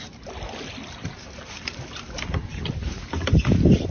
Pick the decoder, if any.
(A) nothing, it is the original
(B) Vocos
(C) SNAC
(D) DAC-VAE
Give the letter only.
A